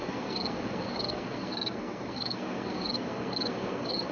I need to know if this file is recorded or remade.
remade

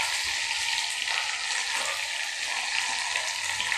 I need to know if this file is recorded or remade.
recorded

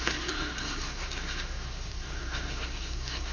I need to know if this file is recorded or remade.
remade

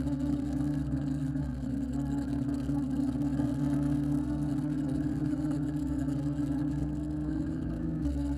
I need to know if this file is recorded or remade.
remade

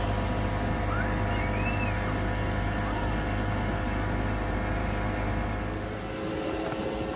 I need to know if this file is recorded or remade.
recorded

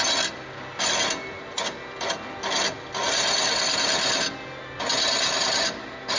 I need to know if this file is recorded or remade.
recorded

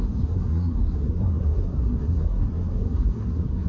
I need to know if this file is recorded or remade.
remade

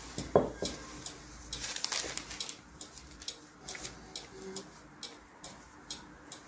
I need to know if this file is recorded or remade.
recorded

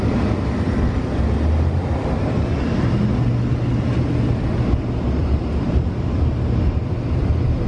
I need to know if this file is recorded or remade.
recorded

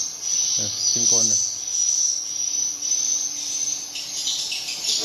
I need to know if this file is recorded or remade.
recorded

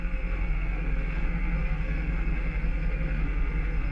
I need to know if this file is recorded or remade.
remade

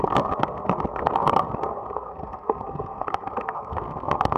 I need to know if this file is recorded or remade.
remade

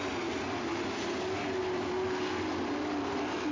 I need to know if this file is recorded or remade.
recorded